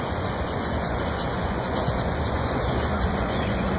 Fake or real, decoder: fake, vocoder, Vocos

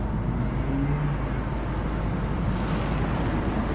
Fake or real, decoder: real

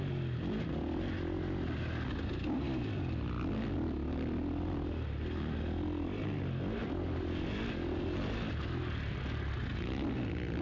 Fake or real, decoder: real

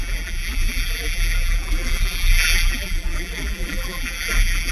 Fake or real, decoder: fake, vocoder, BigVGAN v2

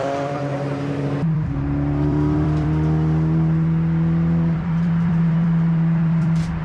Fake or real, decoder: fake, vocoder, BigVGAN v2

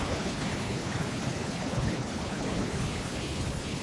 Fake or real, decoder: fake, codec, HILCodec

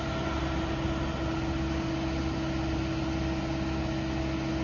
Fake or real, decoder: real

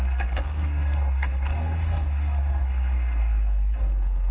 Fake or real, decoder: fake, codec, SNAC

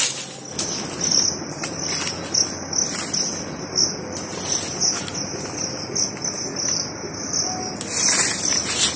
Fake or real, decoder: real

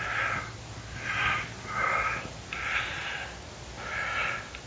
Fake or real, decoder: real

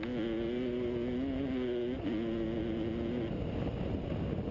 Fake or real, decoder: real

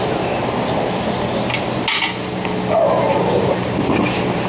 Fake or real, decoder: real